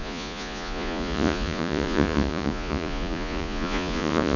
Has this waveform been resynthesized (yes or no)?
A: yes